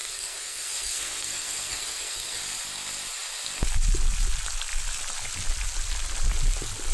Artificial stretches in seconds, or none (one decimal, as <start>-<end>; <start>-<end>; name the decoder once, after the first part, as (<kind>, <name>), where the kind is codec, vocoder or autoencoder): 0.0-2.4 (codec, SNAC)